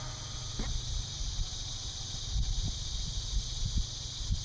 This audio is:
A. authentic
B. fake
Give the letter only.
A